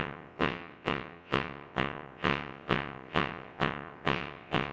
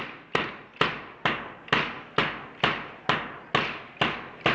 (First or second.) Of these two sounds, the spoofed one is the first